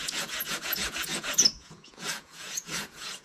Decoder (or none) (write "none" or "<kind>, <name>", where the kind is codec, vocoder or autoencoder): vocoder, Vocos